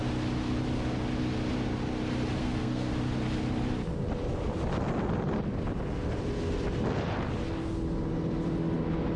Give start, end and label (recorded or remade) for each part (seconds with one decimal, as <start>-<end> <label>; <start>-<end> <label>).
0.0-2.4 recorded; 2.4-2.9 remade; 2.9-9.2 recorded